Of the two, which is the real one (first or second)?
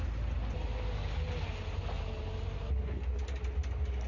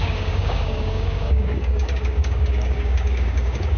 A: first